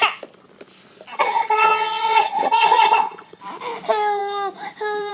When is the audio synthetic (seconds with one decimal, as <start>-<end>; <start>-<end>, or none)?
1.1-3.4